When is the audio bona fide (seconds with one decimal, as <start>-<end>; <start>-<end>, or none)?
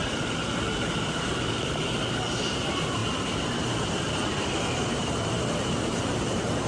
none